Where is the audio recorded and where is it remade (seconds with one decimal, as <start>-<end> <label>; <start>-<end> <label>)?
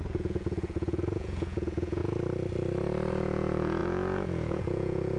0.0-2.0 remade; 2.0-3.1 recorded; 3.1-5.2 remade